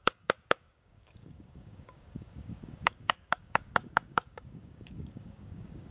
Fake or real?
fake